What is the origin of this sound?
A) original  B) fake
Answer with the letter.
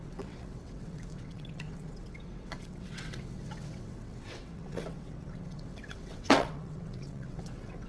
B